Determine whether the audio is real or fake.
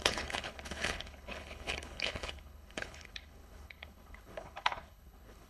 fake